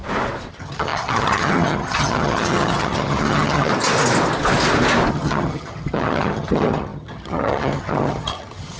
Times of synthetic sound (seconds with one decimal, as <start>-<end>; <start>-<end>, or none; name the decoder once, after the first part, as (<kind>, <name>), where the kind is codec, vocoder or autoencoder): 0.5-3.7 (vocoder, HiFi-GAN); 5.1-8.8